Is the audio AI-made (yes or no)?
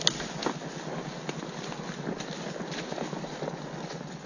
no